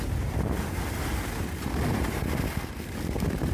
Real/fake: real